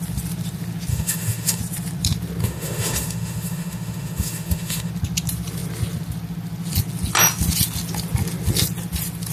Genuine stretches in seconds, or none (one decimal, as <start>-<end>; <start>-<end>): 0.0-0.9; 1.6-2.4; 4.9-9.3